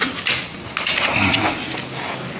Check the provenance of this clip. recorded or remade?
recorded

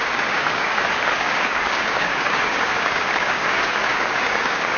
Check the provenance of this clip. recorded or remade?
remade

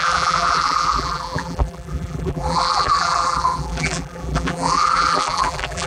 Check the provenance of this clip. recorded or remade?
remade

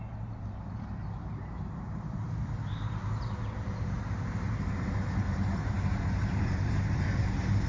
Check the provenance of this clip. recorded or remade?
remade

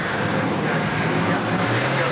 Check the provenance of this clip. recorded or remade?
remade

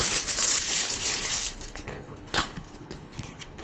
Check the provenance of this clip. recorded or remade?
remade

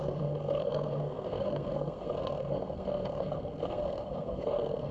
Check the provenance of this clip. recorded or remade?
remade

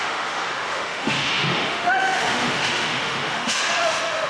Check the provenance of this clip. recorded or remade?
remade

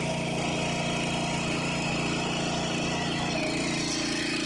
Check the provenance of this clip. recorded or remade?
recorded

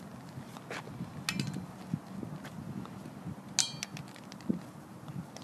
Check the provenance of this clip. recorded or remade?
recorded